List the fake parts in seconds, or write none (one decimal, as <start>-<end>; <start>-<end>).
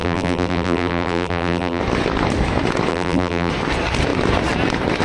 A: 0.0-1.8; 2.9-3.5